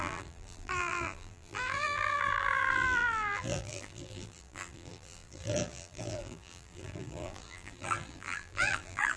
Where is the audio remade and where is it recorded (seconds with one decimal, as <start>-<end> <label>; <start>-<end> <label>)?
0.0-9.2 remade